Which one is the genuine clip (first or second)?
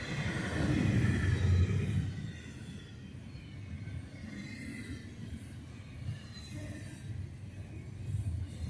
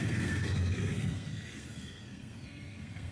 first